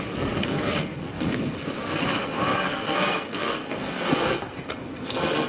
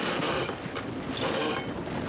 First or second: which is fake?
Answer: first